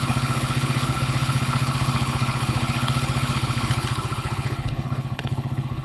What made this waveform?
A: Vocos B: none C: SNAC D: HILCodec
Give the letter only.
D